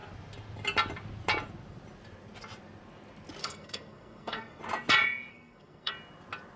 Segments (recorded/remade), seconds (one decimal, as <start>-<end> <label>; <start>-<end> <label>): 0.0-3.4 recorded; 3.4-4.6 remade; 4.6-5.3 recorded; 5.3-5.9 remade; 5.9-6.6 recorded